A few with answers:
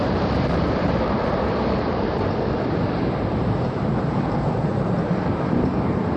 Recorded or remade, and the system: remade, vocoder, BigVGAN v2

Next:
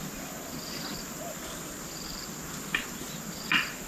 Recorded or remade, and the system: recorded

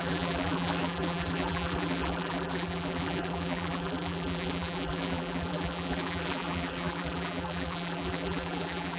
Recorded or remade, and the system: remade, vocoder, BigVGAN v2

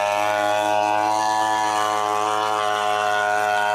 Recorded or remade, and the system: recorded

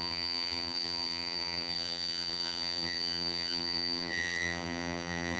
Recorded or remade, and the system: remade, vocoder, BigVGAN v2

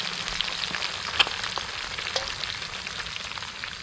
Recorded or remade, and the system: recorded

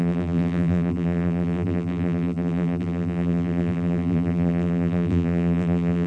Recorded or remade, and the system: remade, vocoder, BigVGAN v2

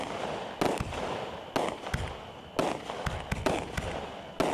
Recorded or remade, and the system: recorded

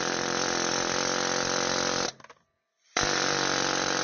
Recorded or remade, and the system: remade, vocoder, BigVGAN v2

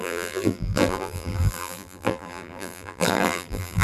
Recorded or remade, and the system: remade, vocoder, BigVGAN v2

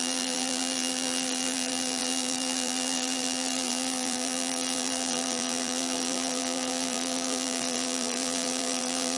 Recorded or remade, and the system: remade, vocoder, BigVGAN v2